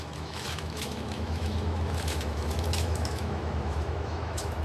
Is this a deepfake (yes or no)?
yes